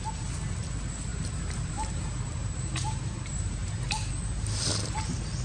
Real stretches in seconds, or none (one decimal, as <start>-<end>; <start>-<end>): 0.0-1.1; 4.1-5.4